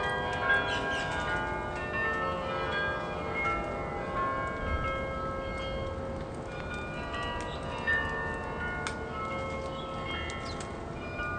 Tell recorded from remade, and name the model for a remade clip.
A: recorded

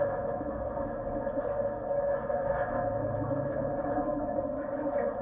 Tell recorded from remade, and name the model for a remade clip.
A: recorded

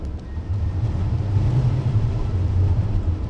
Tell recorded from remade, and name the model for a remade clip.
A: recorded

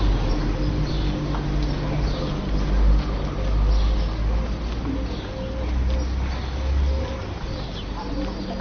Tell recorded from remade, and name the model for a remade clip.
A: recorded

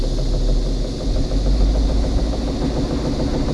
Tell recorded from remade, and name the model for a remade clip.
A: recorded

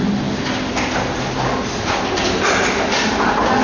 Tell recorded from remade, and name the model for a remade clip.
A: recorded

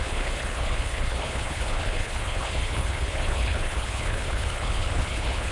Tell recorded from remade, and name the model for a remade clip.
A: remade, codec, HILCodec